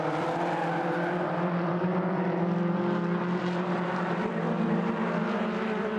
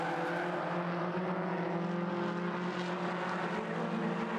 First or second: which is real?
second